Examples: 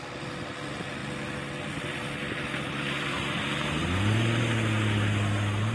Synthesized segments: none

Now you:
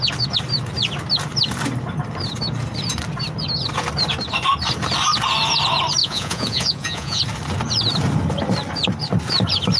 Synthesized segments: 6.0-7.2 (vocoder, Vocos)

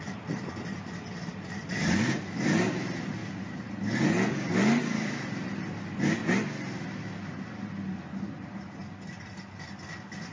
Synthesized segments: 0.0-3.2 (vocoder, BigVGAN v2); 4.5-6.2; 9.7-10.3